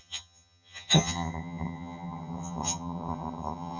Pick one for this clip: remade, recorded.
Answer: remade